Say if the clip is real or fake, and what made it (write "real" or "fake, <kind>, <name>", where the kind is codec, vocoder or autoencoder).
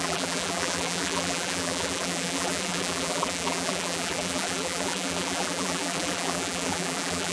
fake, vocoder, BigVGAN v2